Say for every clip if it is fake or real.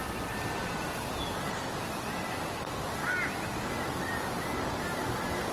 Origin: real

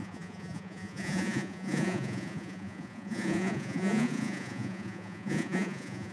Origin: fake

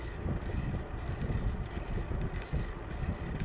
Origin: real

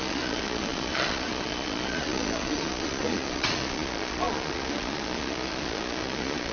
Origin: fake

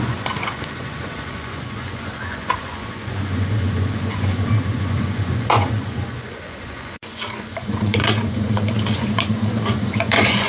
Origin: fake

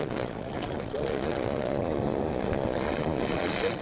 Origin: fake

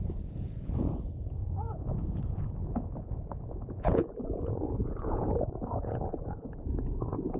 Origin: fake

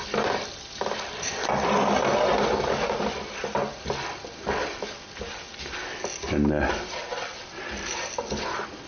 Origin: real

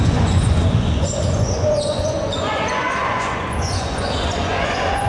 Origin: fake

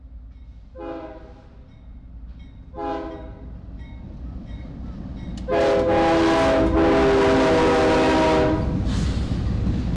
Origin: real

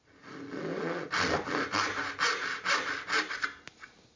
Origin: real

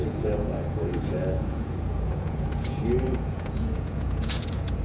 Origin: fake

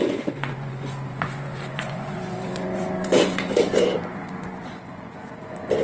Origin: fake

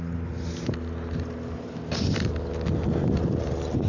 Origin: real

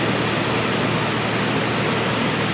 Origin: real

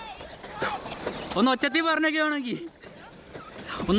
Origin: real